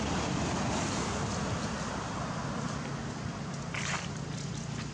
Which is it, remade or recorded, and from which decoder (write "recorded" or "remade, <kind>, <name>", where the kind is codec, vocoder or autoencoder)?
recorded